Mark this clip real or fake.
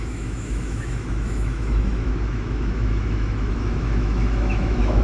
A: fake